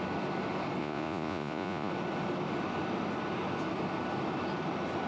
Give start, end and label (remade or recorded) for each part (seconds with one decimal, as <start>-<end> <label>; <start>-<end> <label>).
0.0-0.8 recorded; 0.8-1.9 remade; 1.9-5.1 recorded